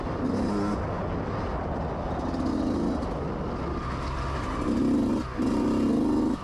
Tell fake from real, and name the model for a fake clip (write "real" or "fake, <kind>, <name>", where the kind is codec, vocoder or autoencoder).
real